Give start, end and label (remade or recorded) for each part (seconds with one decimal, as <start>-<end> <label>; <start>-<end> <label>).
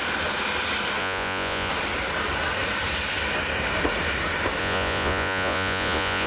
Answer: 0.0-1.0 recorded; 1.0-1.7 remade; 1.7-4.6 recorded; 4.6-6.3 remade